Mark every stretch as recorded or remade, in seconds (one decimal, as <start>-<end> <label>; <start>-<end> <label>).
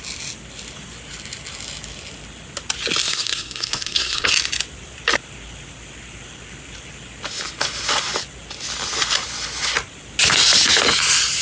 0.0-3.0 recorded; 3.0-4.3 remade; 4.3-11.4 recorded